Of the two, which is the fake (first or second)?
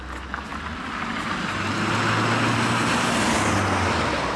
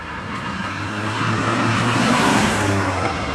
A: second